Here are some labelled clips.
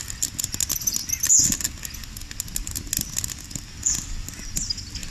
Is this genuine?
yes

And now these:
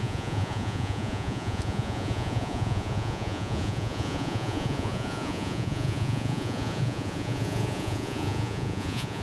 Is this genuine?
no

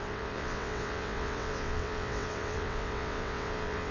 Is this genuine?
no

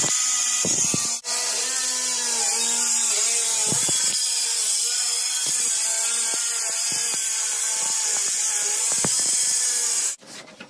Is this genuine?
yes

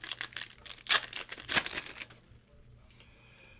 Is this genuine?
yes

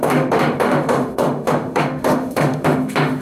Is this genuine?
no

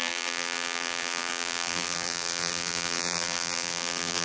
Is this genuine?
no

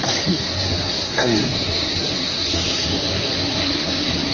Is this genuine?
no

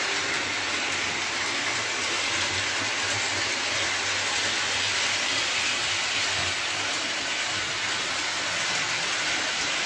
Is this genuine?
yes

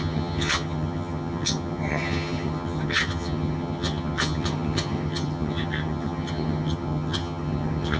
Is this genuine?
no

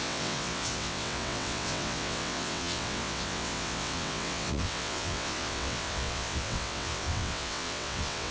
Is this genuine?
no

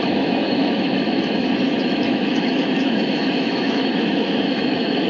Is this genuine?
no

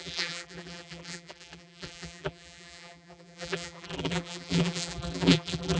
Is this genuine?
no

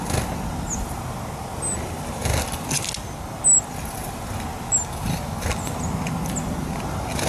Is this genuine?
yes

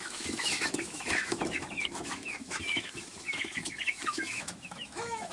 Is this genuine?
no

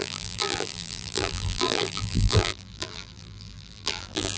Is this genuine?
no